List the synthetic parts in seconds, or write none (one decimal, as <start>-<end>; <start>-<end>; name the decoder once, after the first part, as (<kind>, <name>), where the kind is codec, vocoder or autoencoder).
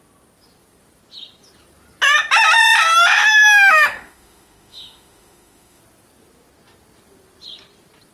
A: 3.2-5.8 (autoencoder, DAC-VAE)